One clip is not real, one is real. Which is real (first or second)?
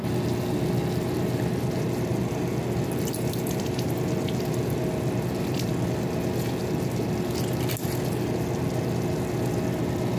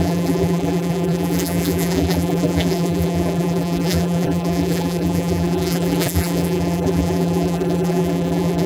first